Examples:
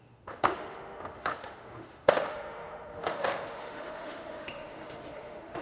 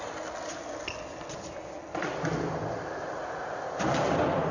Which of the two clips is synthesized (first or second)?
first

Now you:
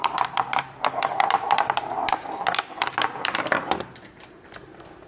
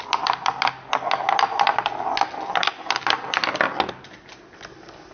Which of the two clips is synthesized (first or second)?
first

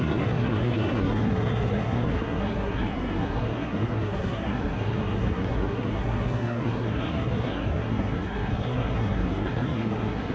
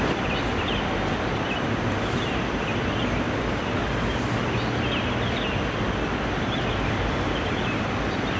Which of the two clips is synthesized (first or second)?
first